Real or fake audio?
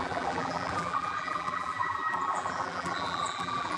fake